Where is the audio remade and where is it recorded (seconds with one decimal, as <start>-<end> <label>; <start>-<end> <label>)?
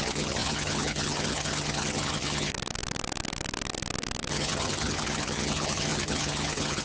0.0-2.5 remade; 2.5-4.3 recorded; 4.3-6.8 remade